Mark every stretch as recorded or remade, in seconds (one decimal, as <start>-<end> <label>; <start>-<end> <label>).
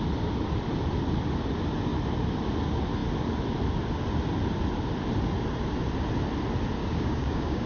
0.0-6.8 recorded; 6.8-7.7 remade